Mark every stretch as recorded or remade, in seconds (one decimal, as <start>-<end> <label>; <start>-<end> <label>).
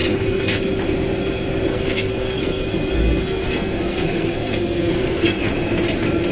0.0-0.6 remade; 0.6-1.7 recorded; 1.7-5.5 remade; 5.5-6.3 recorded